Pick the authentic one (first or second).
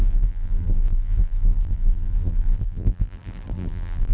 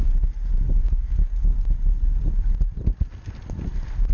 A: second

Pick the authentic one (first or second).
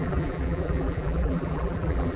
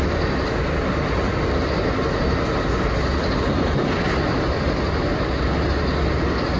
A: second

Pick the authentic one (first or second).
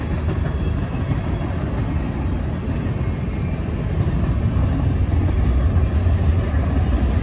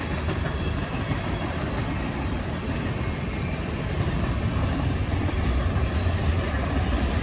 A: first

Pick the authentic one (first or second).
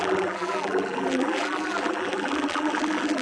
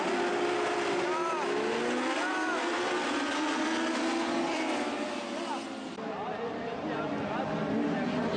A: second